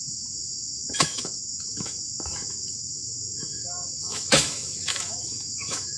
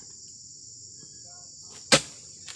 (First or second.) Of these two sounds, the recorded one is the second